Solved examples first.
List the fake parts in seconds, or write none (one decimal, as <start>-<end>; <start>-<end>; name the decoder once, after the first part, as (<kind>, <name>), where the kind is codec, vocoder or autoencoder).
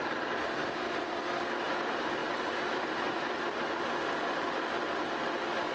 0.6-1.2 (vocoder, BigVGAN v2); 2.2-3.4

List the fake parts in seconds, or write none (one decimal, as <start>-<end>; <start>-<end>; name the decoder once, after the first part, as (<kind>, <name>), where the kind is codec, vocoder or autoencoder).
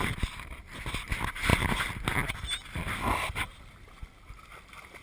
none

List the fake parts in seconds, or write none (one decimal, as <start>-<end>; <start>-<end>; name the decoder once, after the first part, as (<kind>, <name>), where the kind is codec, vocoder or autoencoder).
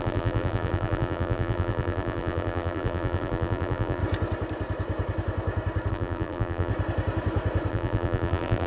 0.0-4.0 (vocoder, BigVGAN v2); 5.9-6.7; 7.7-8.7